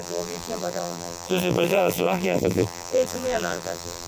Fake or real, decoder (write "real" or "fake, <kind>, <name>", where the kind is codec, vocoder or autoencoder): fake, vocoder, BigVGAN v2